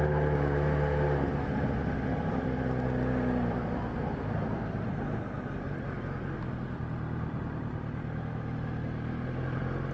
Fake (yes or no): no